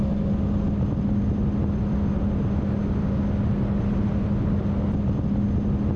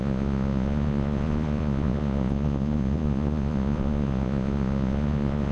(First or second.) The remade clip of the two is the second